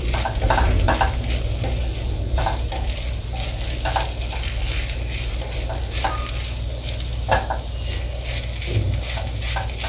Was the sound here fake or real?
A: real